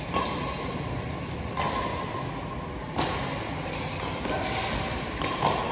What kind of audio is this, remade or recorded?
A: recorded